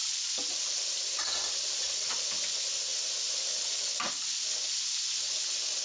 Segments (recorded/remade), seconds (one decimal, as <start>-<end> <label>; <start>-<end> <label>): 0.0-5.8 recorded